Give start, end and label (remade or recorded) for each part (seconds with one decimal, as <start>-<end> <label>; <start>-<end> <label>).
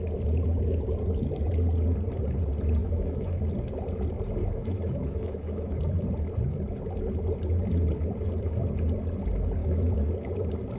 0.0-2.8 recorded; 2.8-3.4 remade; 3.4-4.4 recorded; 4.4-5.8 remade; 5.8-9.6 recorded; 9.6-10.1 remade; 10.1-10.8 recorded